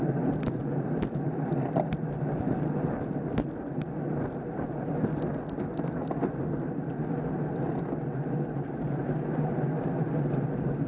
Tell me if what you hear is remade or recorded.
recorded